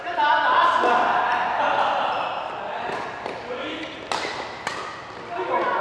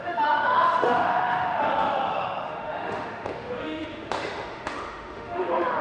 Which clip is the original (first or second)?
first